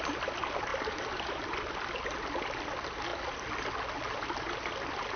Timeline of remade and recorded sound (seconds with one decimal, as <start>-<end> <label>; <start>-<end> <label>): 0.0-5.2 recorded